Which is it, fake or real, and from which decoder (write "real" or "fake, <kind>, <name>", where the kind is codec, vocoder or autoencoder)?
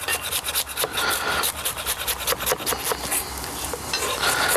real